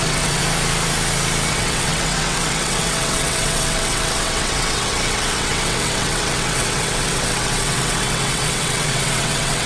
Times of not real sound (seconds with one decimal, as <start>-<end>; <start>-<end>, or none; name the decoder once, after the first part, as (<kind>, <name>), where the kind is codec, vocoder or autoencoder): 0.0-0.4 (vocoder, WaveNeXt); 1.5-9.7

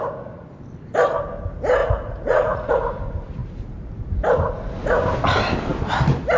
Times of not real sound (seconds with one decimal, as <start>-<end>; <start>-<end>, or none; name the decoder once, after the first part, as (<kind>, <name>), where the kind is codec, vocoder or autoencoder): 1.8-2.7 (vocoder, Vocos)

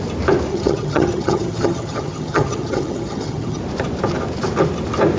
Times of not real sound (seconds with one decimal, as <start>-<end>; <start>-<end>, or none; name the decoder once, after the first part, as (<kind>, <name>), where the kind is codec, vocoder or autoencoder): 0.5-3.6 (vocoder, HiFi-GAN)

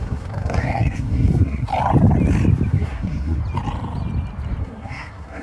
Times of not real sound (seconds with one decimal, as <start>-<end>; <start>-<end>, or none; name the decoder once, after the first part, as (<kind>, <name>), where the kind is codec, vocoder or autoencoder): 0.0-1.7 (codec, SNAC); 2.7-3.4; 4.6-5.4